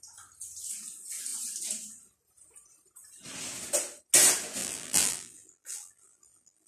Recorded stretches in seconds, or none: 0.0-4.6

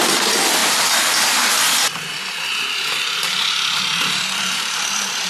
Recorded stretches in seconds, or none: 0.0-5.3

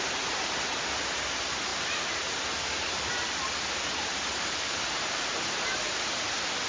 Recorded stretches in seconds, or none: 0.0-6.7

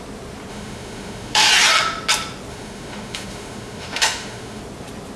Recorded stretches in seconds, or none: 0.0-0.5; 1.5-2.5; 4.6-5.2

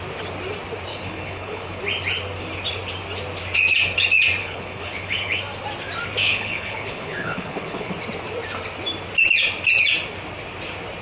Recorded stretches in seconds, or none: 0.0-0.9; 1.8-4.4; 5.4-6.2; 7.9-11.0

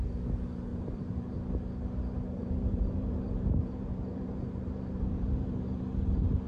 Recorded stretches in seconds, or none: 0.0-0.7; 1.3-2.4; 5.8-6.5